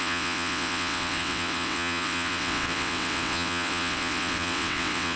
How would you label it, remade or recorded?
remade